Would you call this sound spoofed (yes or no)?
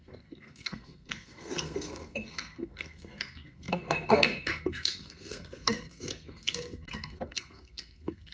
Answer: yes